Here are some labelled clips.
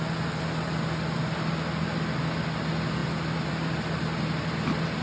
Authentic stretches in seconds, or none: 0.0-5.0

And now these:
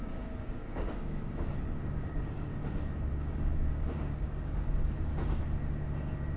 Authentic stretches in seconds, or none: 2.5-3.1; 5.1-6.4